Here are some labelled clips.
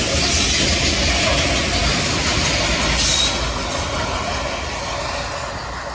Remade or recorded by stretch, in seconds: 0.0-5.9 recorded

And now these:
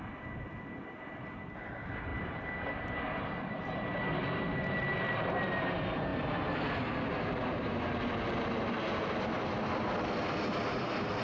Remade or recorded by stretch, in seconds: 0.0-11.2 recorded

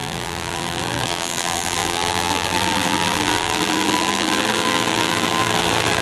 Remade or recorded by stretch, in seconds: 0.0-6.0 remade

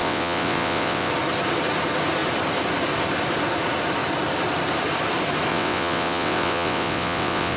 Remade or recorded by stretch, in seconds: 0.0-1.1 remade; 1.1-5.5 recorded; 5.5-7.6 remade

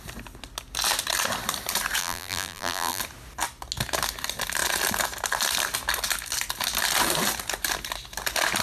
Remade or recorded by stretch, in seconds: 0.0-2.0 recorded; 2.0-3.0 remade; 3.0-8.6 recorded